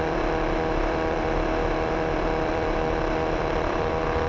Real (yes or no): no